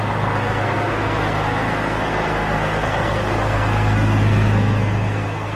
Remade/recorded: remade